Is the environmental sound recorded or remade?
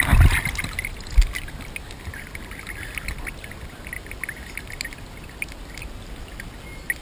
recorded